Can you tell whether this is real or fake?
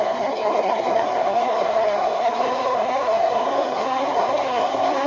fake